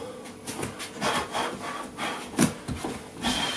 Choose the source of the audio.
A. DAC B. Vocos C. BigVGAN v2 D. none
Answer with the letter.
D